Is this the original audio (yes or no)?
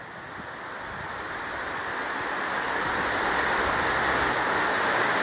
yes